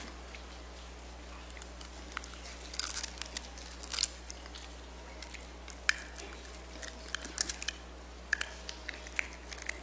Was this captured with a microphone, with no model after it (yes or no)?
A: yes